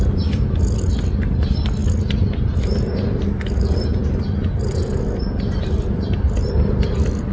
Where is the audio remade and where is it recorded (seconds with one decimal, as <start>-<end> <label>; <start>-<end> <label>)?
0.0-7.3 recorded

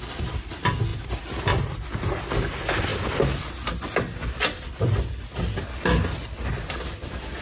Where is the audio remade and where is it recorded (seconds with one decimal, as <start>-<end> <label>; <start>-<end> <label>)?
0.0-7.4 recorded

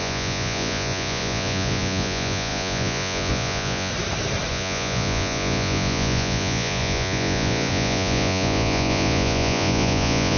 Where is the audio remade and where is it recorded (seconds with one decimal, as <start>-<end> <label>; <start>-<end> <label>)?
0.0-3.9 remade; 3.9-4.5 recorded; 4.5-10.4 remade

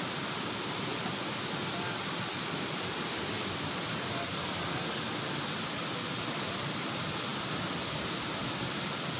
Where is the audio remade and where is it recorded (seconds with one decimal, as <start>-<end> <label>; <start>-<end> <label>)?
0.0-9.2 recorded

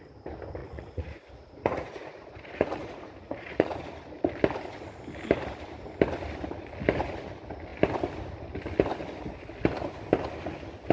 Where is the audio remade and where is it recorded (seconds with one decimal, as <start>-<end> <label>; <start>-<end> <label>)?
0.0-0.6 recorded; 0.6-3.8 remade; 3.8-10.9 recorded